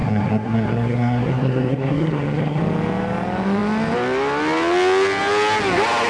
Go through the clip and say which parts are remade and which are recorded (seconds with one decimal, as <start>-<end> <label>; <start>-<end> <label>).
0.0-2.6 remade; 2.6-6.1 recorded